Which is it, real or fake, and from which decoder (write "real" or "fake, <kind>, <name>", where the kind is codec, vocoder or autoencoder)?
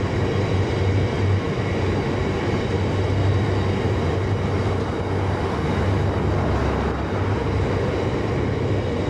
real